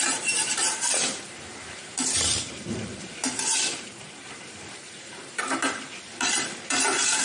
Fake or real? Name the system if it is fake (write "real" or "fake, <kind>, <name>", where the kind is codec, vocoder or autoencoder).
fake, vocoder, BigVGAN v2